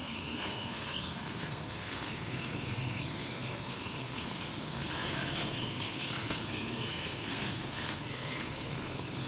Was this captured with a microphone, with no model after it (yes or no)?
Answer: no